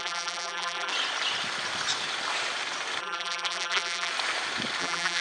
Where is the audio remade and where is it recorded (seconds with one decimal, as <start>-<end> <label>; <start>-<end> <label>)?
0.0-0.9 remade; 0.9-3.0 recorded; 3.0-4.1 remade; 4.1-4.8 recorded; 4.8-5.2 remade